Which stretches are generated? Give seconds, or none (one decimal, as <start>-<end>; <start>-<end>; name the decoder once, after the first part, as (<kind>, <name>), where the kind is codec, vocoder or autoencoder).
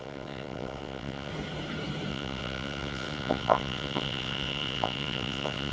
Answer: 0.0-1.3 (vocoder, WaveNeXt); 2.1-5.7